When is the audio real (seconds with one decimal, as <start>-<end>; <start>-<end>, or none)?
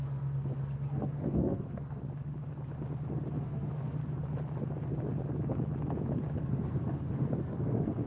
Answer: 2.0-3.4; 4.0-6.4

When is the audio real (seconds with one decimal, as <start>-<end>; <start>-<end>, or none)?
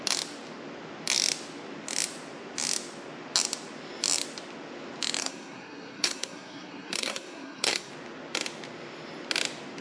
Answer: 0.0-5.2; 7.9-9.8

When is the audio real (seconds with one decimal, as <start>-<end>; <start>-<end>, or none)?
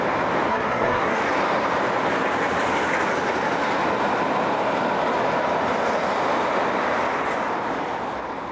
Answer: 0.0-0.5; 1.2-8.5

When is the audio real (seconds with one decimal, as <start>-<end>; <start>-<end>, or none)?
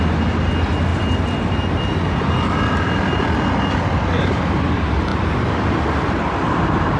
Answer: 0.0-7.0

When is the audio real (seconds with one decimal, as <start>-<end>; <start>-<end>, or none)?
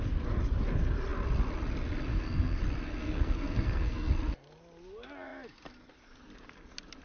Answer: 0.0-2.1; 2.6-3.0; 4.1-7.0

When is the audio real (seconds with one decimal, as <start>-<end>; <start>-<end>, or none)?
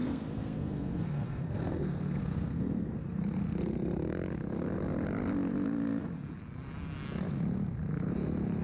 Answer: 3.2-8.6